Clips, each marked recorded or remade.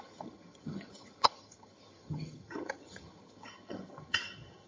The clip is remade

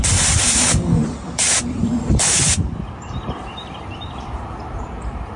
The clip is remade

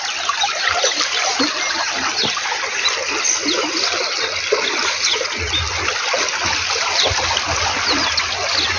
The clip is recorded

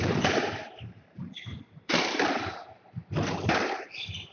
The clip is remade